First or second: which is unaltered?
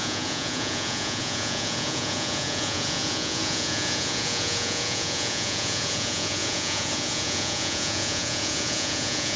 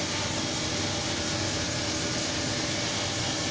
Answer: second